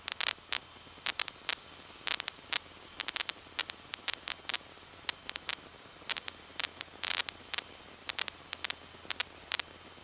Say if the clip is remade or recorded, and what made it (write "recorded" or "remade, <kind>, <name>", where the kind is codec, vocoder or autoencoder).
recorded